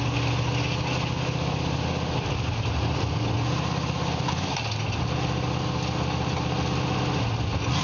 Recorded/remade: recorded